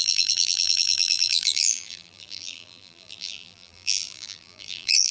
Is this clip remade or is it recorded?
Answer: remade